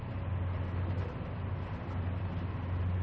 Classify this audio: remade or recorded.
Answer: recorded